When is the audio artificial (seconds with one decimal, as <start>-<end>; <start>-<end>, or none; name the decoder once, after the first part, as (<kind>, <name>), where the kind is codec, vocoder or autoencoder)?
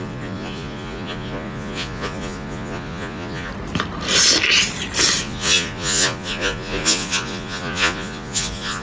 0.0-3.5 (vocoder, Vocos); 5.2-8.8